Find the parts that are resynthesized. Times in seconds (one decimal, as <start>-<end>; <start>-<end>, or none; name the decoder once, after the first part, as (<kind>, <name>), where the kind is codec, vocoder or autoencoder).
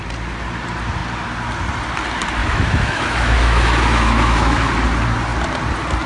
2.4-4.7 (autoencoder, DAC-VAE)